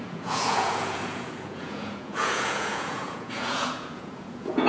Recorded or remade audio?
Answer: remade